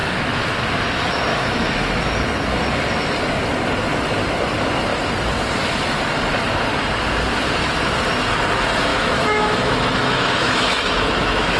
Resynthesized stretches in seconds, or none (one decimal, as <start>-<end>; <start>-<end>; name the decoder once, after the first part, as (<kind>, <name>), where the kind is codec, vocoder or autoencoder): 0.0-0.5 (autoencoder, DAC-VAE); 1.3-2.0; 8.9-11.6